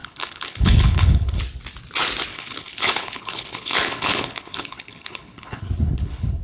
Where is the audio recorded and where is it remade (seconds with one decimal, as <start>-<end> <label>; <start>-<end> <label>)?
0.0-1.4 remade; 1.4-2.3 recorded; 2.3-6.4 remade